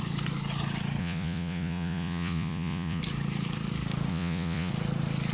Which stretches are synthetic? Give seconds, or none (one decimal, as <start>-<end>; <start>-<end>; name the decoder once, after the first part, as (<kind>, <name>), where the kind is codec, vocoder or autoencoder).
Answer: 1.0-3.0 (vocoder, Vocos); 4.1-4.7